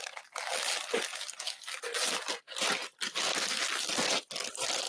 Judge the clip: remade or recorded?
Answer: recorded